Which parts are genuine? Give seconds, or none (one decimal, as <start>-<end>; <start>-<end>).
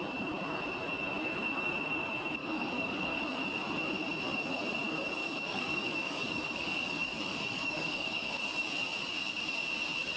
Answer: 0.0-2.4; 3.2-5.2; 8.3-10.2